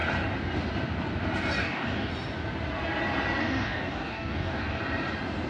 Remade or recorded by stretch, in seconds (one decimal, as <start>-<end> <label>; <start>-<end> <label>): 0.0-1.6 recorded; 1.6-2.1 remade; 2.1-3.4 recorded; 3.4-4.8 remade; 4.8-5.5 recorded